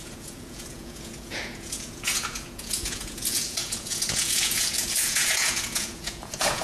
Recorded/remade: remade